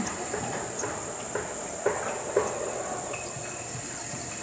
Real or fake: real